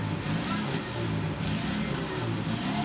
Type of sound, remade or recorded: recorded